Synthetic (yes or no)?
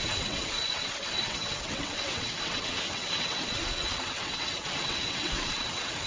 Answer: yes